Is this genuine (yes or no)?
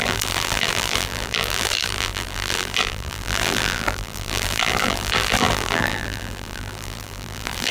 no